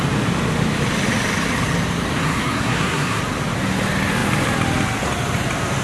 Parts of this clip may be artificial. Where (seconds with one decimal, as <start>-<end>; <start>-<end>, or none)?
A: 2.2-3.2